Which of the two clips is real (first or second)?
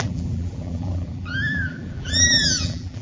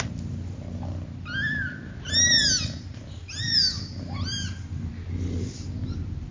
second